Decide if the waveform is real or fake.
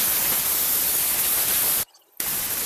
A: real